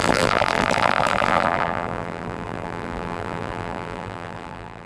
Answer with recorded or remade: remade